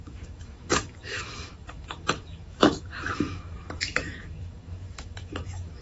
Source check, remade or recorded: remade